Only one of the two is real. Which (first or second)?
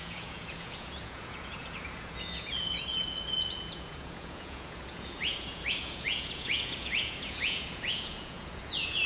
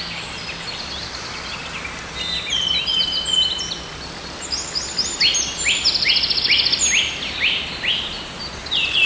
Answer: second